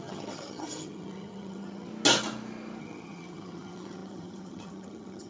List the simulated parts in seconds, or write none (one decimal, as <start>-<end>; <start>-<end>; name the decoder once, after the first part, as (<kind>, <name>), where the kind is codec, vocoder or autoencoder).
0.0-1.9 (vocoder, HiFi-GAN); 2.8-5.3